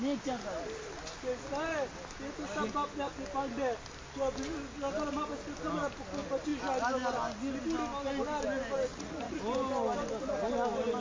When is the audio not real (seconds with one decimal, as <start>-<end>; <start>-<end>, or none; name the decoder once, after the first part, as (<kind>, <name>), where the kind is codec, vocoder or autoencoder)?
8.9-9.4 (vocoder, Vocos)